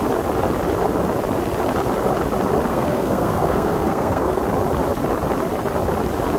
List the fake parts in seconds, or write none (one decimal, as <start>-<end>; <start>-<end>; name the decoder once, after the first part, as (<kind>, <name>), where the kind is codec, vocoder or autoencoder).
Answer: 2.7-4.4 (codec, SNAC)